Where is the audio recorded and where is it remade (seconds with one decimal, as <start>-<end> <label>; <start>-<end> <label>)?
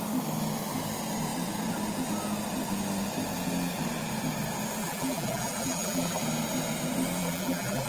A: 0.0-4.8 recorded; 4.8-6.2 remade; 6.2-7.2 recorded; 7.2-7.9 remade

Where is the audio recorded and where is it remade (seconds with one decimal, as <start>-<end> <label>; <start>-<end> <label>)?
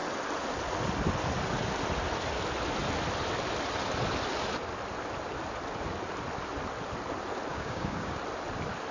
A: 0.0-7.5 recorded; 7.5-8.2 remade; 8.2-8.9 recorded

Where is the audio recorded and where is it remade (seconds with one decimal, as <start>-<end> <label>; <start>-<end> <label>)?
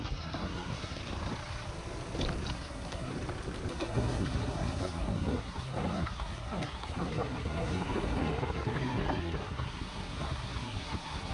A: 0.0-1.0 remade; 1.0-2.5 recorded; 2.5-3.1 remade; 3.1-3.7 recorded; 3.7-11.3 remade